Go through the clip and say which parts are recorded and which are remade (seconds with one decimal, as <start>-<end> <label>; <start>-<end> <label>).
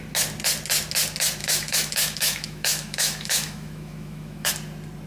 0.0-1.4 recorded; 1.4-4.5 remade; 4.5-5.1 recorded